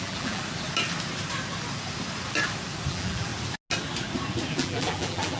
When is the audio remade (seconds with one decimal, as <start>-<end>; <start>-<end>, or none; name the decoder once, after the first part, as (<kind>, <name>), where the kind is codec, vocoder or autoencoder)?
0.0-0.4 (vocoder, BigVGAN v2); 2.9-3.3; 4.5-5.4